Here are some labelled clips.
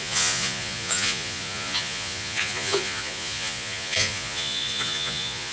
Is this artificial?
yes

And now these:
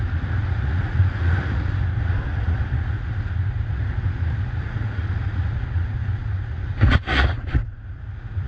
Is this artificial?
yes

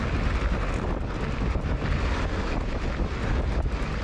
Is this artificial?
no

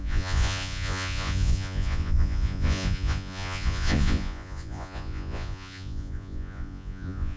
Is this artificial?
yes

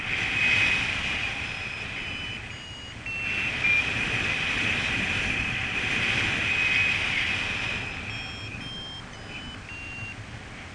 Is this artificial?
no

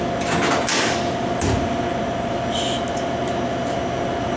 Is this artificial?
no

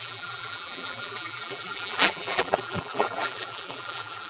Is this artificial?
yes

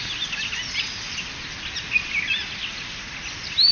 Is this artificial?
no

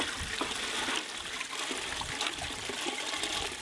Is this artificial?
no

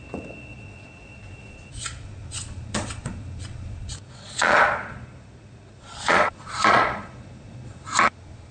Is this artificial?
yes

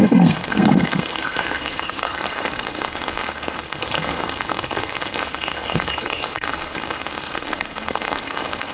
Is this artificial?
yes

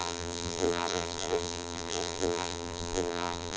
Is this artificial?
yes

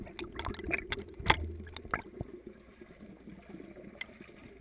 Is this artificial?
no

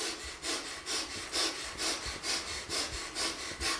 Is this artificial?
no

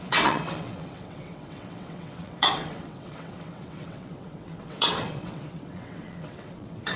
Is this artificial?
yes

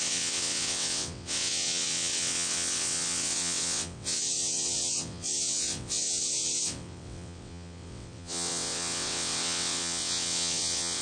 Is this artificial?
yes